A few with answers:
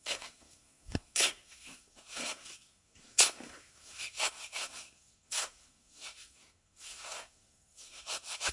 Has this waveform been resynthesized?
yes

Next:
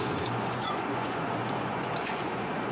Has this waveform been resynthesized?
yes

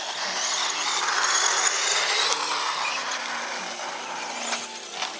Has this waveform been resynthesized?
no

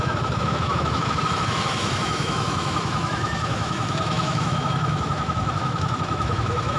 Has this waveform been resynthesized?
yes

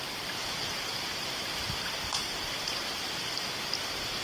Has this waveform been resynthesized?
no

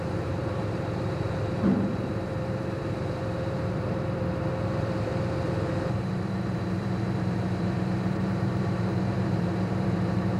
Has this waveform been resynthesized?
yes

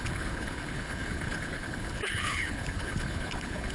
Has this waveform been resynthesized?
yes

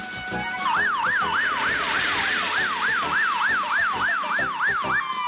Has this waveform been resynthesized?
no